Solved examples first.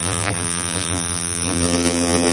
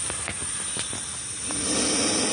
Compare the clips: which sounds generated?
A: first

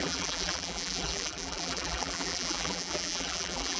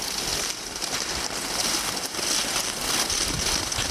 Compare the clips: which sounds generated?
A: first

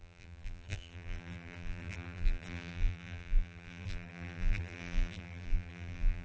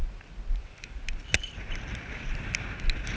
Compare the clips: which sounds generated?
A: first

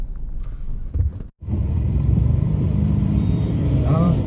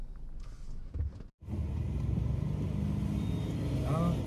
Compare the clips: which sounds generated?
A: first